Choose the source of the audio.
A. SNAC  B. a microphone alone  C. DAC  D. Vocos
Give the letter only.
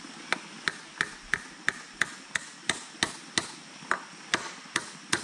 B